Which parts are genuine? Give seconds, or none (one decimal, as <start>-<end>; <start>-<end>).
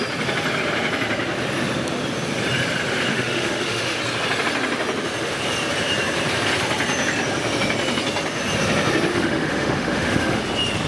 0.0-3.1; 4.0-9.1; 10.4-10.9